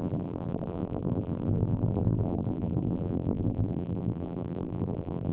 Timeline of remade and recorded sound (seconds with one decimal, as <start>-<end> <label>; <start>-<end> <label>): 0.0-5.3 remade